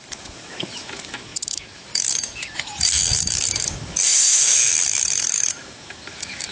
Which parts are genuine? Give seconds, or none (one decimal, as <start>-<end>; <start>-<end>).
none